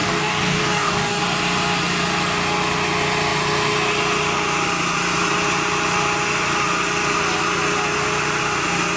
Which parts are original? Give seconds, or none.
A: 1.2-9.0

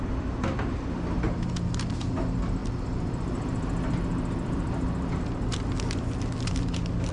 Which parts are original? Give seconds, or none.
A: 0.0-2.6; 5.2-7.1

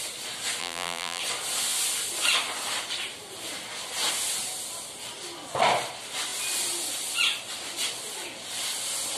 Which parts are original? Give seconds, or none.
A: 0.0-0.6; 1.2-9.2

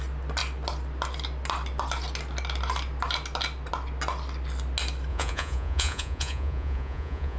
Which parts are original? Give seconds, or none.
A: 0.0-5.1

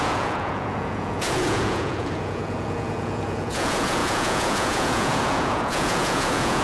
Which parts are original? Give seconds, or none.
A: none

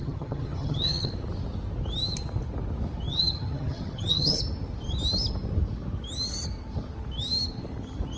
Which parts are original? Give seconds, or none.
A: 1.1-3.1; 4.4-8.2

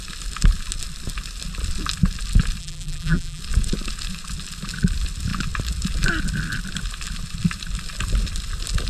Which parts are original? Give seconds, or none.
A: 0.0-2.6; 3.4-8.9

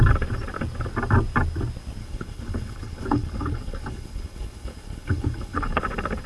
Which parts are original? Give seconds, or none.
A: 0.0-2.0; 5.8-6.3